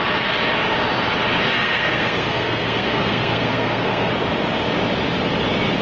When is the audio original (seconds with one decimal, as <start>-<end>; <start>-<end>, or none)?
0.0-1.5; 4.1-5.8